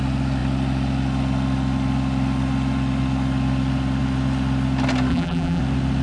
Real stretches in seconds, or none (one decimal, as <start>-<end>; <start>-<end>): 0.0-5.1; 5.6-6.0

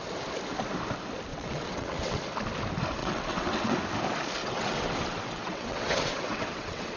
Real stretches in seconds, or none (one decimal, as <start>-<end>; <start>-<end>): 0.0-1.3; 2.2-3.0; 3.7-4.4

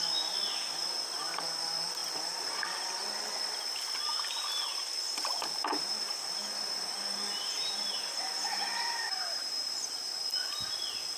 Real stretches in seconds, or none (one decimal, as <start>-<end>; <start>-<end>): 0.0-5.7; 10.2-11.2

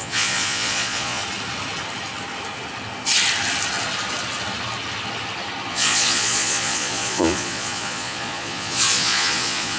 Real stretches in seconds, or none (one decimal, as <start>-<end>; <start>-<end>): 1.2-5.7